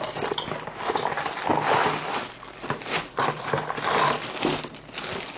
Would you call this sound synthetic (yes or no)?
no